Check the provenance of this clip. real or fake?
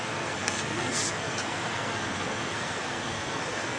fake